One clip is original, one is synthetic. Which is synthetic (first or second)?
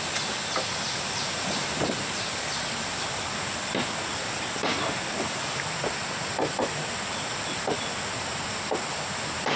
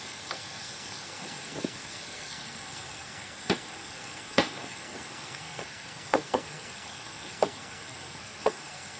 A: second